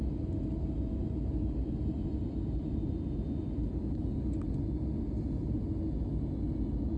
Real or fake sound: real